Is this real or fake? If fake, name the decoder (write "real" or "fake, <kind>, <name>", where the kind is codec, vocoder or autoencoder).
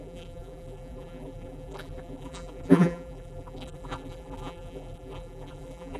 fake, vocoder, BigVGAN v2